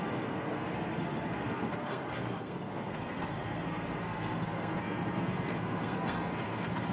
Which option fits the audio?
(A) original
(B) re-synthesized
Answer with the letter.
B